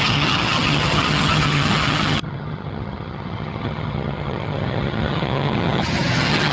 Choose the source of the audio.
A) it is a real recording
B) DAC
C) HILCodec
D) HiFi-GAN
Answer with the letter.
D